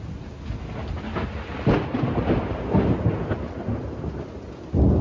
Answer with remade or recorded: recorded